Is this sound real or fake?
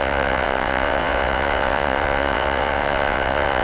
fake